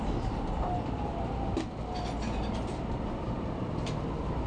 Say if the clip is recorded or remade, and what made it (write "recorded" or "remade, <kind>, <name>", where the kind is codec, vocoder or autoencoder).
remade, vocoder, BigVGAN v2